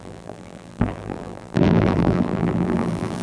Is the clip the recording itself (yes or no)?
no